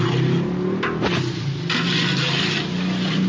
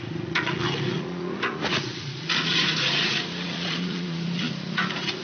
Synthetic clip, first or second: second